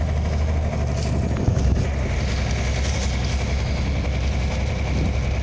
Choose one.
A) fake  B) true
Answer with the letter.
B